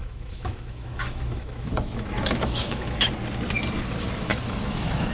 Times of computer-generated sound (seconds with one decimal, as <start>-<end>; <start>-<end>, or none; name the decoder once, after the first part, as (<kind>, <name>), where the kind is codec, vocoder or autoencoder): 0.0-3.1 (autoencoder, DAC-VAE); 4.3-5.1